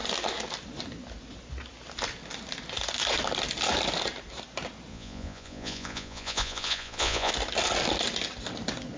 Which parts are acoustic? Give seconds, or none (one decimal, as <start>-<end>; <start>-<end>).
0.0-4.9; 7.3-9.0